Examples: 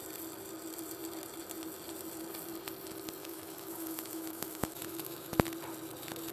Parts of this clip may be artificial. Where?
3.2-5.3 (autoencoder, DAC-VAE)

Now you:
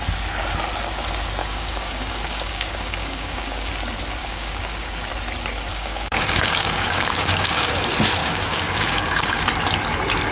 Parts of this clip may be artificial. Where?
1.4-3.7 (codec, DAC); 4.2-5.1; 5.7-7.7; 8.2-9.4

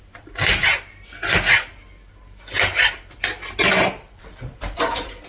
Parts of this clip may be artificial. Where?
0.0-0.7 (vocoder, BigVGAN v2); 3.9-5.3

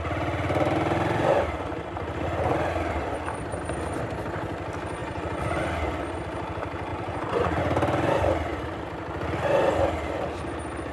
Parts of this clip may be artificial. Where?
5.0-5.6 (vocoder, Vocos); 6.9-7.6